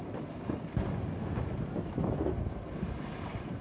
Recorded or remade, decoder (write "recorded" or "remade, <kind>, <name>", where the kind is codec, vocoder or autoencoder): recorded